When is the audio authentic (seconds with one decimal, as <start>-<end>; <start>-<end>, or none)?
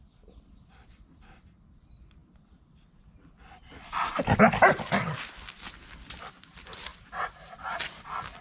0.0-8.4